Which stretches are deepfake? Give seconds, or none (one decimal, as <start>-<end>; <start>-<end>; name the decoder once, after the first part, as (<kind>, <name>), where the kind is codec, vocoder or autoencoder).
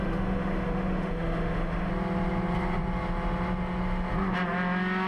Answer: 0.0-1.9 (autoencoder, DAC-VAE)